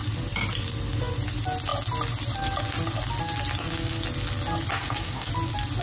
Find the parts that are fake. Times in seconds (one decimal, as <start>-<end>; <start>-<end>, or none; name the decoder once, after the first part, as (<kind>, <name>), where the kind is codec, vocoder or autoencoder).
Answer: 4.8-5.3 (codec, DAC)